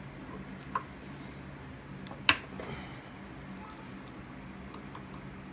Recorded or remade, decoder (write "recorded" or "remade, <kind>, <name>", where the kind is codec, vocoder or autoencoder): recorded